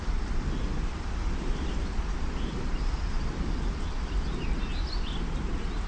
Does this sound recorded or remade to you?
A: recorded